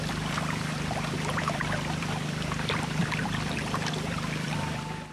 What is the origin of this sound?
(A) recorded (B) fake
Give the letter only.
B